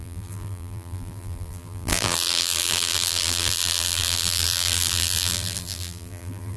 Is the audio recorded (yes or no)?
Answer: no